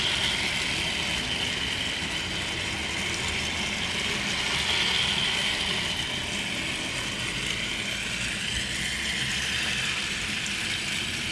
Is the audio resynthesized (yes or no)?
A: no